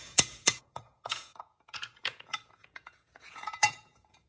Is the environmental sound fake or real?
fake